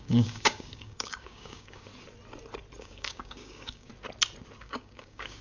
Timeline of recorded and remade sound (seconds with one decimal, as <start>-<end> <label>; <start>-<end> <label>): 0.0-1.9 remade; 1.9-2.8 recorded; 2.8-3.9 remade; 3.9-4.6 recorded; 4.6-5.4 remade